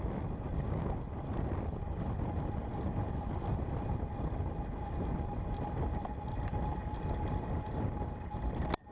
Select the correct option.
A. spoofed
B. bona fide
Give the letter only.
B